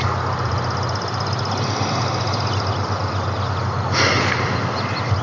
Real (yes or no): yes